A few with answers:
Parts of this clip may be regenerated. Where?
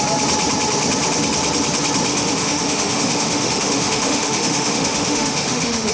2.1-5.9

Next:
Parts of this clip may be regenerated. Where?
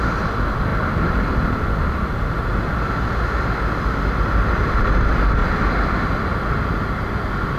none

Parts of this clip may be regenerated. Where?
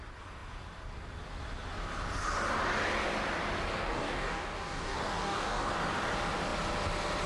3.7-5.7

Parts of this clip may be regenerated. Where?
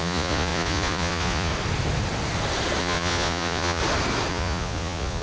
0.0-1.5; 2.8-3.8; 4.3-5.2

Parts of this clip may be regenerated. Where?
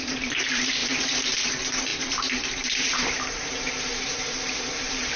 0.0-5.2